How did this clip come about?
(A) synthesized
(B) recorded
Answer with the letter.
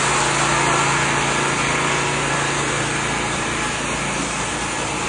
B